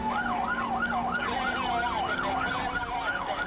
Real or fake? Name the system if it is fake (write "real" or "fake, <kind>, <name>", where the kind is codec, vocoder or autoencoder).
real